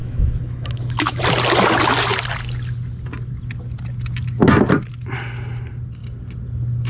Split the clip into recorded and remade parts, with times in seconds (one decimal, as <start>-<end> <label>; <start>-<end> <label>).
0.0-1.2 remade; 1.2-6.9 recorded